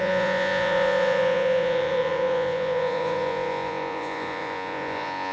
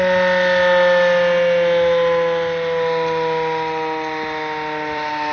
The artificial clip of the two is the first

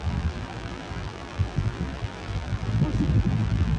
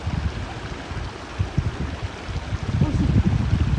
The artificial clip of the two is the first